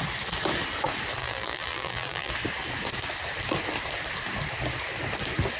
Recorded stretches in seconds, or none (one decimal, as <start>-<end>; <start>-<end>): 0.0-1.2; 2.3-5.6